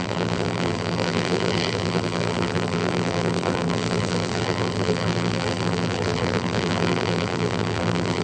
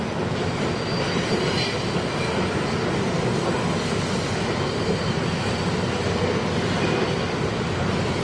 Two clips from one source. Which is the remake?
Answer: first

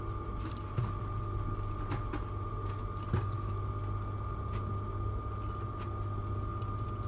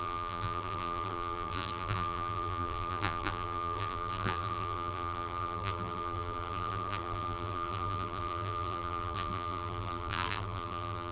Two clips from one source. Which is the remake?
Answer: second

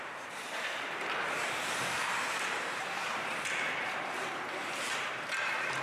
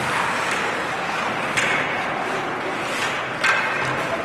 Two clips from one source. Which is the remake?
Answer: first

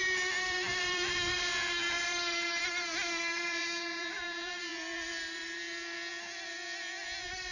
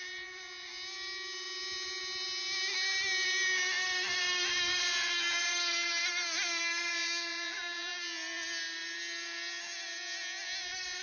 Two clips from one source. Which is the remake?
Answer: first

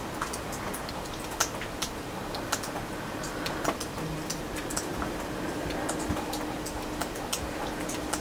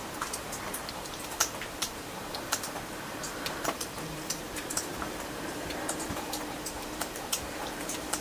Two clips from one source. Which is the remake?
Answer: second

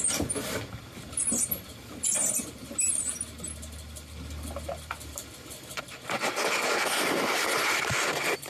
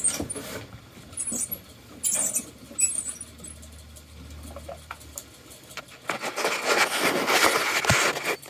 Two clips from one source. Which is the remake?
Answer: first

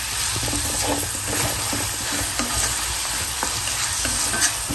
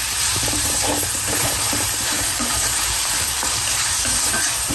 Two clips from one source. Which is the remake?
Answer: second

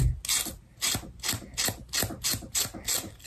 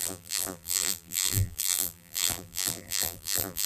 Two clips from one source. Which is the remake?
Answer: second